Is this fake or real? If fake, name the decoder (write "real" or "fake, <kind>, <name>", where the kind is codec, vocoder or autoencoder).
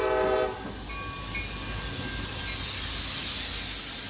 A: real